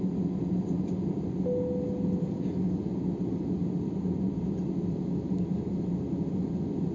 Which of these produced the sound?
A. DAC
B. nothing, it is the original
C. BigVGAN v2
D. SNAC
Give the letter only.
B